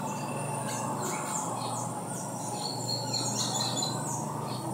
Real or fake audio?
fake